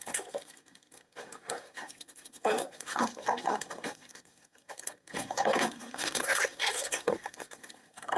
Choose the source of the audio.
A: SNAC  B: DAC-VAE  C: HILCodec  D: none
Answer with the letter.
A